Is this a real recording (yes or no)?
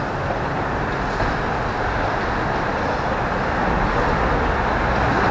yes